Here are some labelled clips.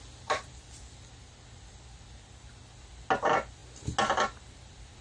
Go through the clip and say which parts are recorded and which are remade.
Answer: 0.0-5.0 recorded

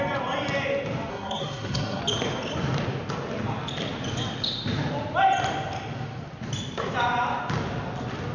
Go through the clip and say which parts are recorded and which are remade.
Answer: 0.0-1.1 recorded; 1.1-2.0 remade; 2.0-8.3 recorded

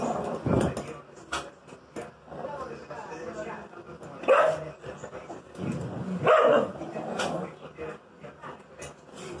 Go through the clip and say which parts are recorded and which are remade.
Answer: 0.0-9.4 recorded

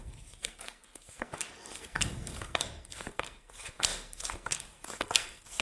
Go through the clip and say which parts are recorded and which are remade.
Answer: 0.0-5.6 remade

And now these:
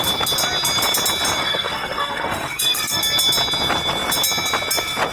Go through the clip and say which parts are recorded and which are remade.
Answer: 0.0-1.4 recorded; 1.4-3.0 remade; 3.0-5.1 recorded

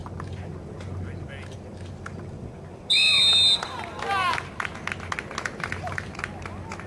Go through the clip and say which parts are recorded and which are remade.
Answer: 0.0-6.9 recorded